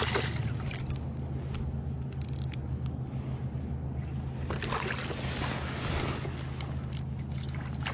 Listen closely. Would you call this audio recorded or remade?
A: recorded